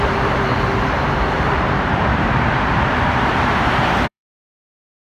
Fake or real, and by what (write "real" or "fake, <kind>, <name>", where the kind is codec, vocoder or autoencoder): fake, vocoder, BigVGAN v2